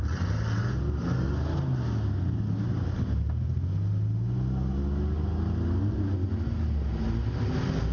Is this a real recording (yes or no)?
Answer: yes